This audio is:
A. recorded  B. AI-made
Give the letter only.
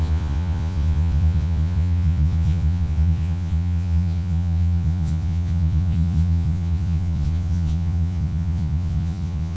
B